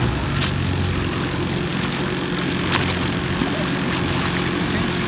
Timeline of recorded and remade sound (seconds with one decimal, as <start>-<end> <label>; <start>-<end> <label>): 0.0-5.1 recorded